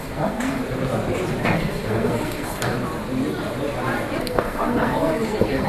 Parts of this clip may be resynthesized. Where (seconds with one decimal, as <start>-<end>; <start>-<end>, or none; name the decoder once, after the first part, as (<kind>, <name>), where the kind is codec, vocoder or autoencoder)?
0.0-0.6 (codec, SNAC); 1.4-2.7; 4.2-5.7